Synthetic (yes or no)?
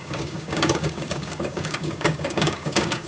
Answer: yes